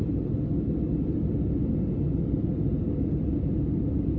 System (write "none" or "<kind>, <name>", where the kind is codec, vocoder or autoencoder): none